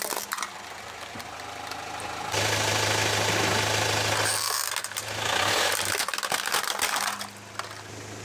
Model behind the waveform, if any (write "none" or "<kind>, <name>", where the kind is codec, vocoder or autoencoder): none